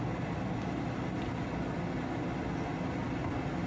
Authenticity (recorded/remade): recorded